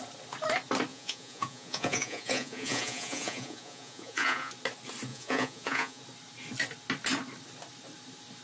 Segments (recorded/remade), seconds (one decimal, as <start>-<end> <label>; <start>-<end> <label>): 0.0-0.9 recorded; 0.9-4.5 remade; 4.5-5.1 recorded; 5.1-6.0 remade; 6.0-8.4 recorded